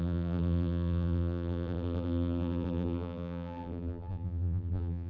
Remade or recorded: remade